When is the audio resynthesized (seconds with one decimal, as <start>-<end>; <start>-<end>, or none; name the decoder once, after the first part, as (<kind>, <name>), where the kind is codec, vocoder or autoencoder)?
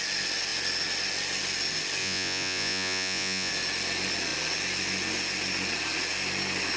2.0-3.5 (vocoder, Vocos)